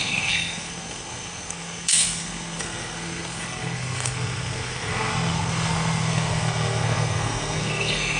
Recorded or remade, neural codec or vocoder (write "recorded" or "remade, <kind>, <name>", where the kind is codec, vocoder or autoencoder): remade, codec, SNAC